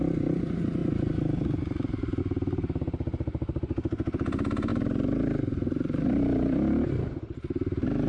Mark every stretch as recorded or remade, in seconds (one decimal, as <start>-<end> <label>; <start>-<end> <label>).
0.0-4.7 recorded; 4.7-8.1 remade